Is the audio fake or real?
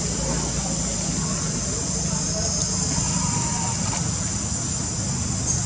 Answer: real